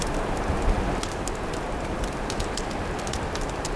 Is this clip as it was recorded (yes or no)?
yes